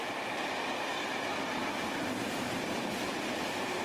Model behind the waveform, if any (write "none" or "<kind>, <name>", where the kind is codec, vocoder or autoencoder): vocoder, BigVGAN v2